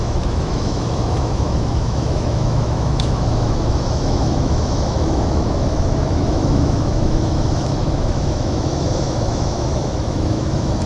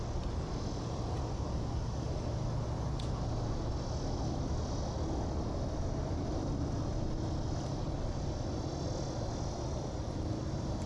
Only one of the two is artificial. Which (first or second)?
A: first